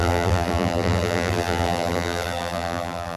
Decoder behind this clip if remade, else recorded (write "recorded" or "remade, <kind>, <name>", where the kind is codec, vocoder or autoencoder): remade, vocoder, BigVGAN v2